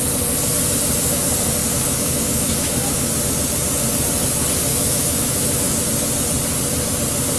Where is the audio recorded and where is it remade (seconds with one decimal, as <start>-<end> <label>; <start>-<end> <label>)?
0.0-1.6 recorded; 1.6-3.0 remade; 3.0-4.7 recorded; 4.7-5.8 remade; 5.8-7.4 recorded